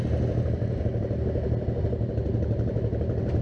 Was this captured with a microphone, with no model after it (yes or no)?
yes